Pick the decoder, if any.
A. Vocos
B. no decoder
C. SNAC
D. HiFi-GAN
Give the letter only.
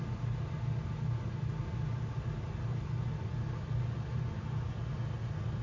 B